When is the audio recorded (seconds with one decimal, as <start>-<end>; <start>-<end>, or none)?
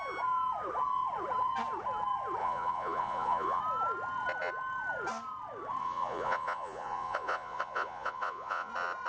0.0-2.4; 3.6-5.8; 8.7-9.1